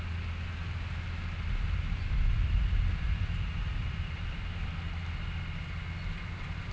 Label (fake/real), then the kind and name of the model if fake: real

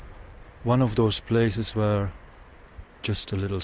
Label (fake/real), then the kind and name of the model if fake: real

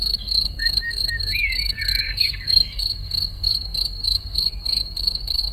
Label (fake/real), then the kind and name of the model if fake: fake, codec, SNAC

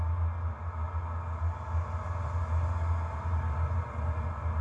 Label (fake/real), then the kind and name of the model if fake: real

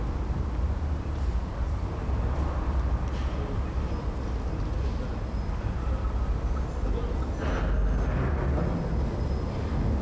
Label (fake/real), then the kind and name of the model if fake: real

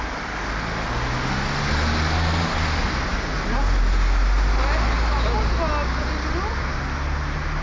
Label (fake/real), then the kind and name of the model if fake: real